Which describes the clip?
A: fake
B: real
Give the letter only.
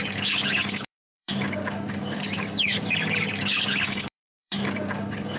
A